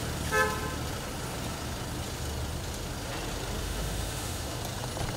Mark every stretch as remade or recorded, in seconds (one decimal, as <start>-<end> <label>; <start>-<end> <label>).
0.0-3.6 recorded; 3.6-4.6 remade; 4.6-5.2 recorded